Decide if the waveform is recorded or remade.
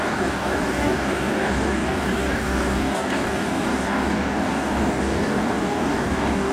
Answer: remade